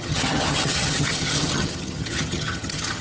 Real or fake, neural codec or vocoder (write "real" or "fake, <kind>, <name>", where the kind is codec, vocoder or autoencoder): fake, vocoder, HiFi-GAN